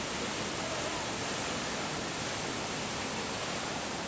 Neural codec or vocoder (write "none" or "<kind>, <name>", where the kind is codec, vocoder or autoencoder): none